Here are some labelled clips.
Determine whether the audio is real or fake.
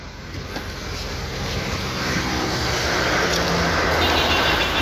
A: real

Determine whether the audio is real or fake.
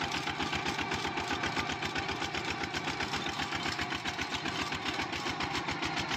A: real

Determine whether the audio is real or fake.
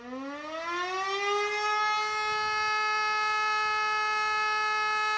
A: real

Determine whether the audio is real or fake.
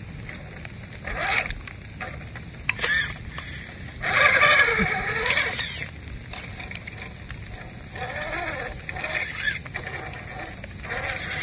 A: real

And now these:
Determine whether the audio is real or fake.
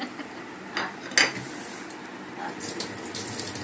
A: real